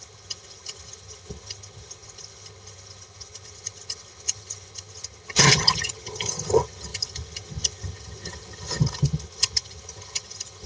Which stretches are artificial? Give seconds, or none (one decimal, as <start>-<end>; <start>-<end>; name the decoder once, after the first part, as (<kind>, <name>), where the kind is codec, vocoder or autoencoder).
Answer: 0.0-10.7 (vocoder, HiFi-GAN)